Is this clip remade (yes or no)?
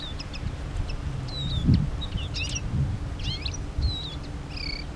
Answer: no